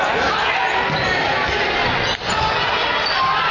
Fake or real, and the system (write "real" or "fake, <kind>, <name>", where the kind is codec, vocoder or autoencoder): real